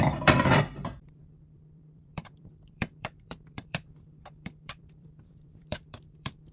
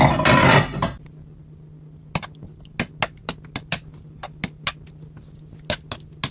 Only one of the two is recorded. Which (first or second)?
second